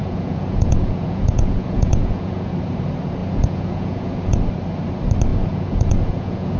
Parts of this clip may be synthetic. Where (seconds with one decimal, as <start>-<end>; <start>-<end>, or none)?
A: 0.0-2.5; 3.2-4.4; 5.3-6.6